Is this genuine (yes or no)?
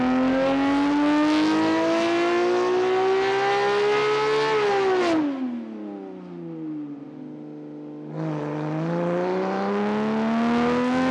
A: yes